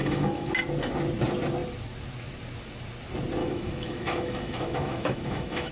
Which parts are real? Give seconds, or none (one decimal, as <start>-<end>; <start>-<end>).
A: 0.5-3.4